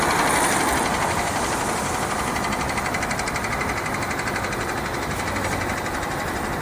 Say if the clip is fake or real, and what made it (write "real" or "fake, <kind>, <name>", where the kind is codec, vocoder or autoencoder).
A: real